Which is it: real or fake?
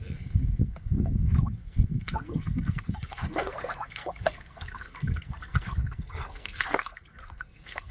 fake